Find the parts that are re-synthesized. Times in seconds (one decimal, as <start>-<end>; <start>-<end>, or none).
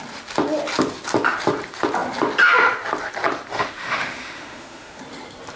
3.5-5.0